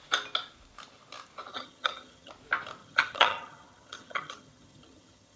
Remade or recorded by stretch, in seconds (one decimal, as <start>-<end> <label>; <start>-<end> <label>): 0.0-1.5 recorded; 1.5-2.3 remade; 2.3-2.8 recorded; 2.8-5.4 remade